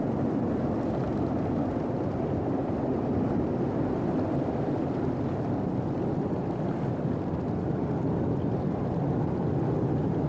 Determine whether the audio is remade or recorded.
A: recorded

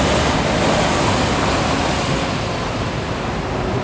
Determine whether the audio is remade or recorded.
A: recorded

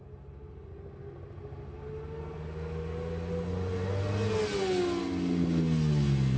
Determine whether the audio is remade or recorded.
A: recorded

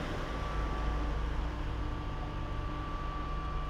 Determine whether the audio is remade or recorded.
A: recorded